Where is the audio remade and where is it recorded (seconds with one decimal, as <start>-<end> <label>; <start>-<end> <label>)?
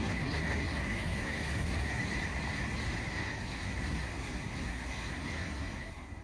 0.0-2.0 remade; 2.0-3.0 recorded; 3.0-6.2 remade